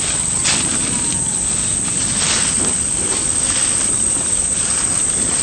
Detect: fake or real real